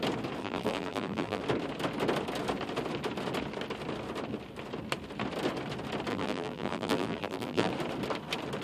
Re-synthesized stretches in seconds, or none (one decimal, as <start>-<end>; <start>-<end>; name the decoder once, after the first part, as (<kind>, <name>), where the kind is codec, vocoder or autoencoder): 0.4-1.4 (vocoder, BigVGAN v2); 6.1-7.7